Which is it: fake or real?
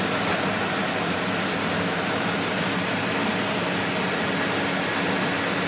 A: real